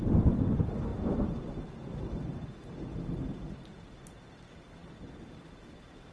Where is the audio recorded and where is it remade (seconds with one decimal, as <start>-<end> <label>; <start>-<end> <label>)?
0.0-6.1 recorded